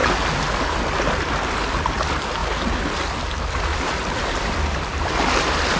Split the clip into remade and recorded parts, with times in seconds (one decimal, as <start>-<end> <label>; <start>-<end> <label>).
0.0-3.7 recorded; 3.7-5.2 remade; 5.2-5.8 recorded